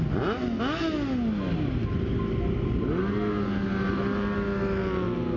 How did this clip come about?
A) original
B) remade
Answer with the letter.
A